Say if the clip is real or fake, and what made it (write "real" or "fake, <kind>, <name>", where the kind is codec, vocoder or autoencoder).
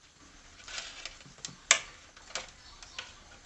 real